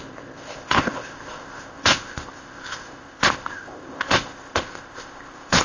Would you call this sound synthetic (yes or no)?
yes